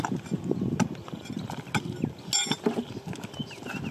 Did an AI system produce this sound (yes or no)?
no